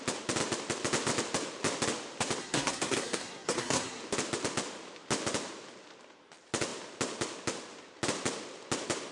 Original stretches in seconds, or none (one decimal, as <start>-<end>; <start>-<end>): 0.0-2.4; 4.0-9.1